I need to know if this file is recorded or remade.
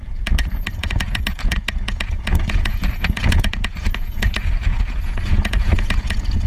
remade